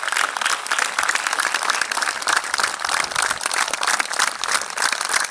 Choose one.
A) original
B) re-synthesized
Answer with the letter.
B